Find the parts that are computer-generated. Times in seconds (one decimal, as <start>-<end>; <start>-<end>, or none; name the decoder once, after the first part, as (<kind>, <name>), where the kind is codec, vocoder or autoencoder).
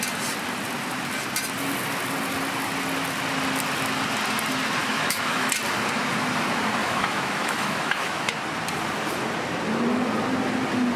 4.8-5.5 (autoencoder, DAC-VAE); 6.8-8.3